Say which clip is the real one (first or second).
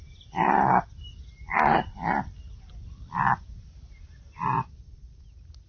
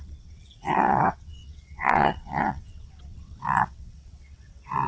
first